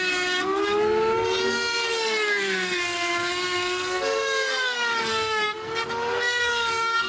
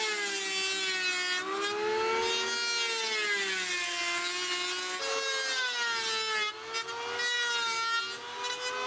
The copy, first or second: first